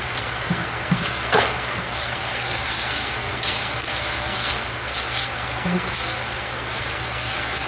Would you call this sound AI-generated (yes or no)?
yes